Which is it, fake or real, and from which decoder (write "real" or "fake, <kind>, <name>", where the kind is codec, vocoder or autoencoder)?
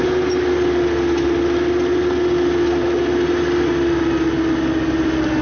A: real